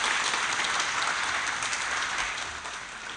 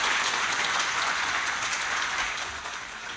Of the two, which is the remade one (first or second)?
second